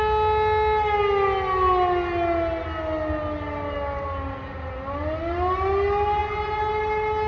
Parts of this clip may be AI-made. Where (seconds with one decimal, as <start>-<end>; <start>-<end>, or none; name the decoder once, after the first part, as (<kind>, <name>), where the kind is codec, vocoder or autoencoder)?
none